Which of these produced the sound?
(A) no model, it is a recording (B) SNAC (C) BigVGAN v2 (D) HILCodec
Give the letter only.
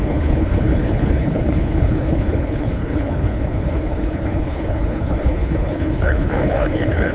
D